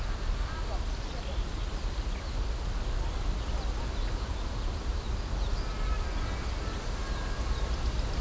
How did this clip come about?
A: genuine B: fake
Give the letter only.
A